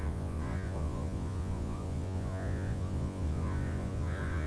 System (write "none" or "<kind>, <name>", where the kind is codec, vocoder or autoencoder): vocoder, Vocos